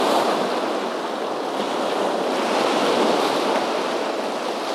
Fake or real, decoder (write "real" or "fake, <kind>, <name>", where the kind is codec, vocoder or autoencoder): real